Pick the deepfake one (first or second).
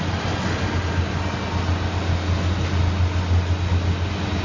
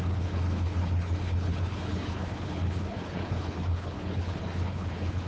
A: second